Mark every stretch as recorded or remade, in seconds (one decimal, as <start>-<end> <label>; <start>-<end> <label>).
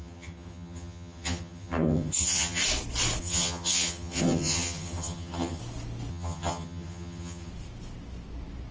0.0-2.6 remade; 2.6-3.2 recorded; 3.2-5.6 remade; 5.6-6.1 recorded; 6.1-7.5 remade; 7.5-8.7 recorded